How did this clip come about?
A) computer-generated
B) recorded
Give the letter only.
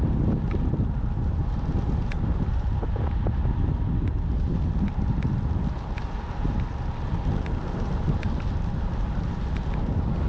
B